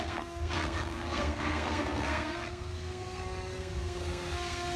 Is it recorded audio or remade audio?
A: remade